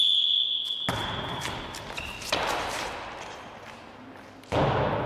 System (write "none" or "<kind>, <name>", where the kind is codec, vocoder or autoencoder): none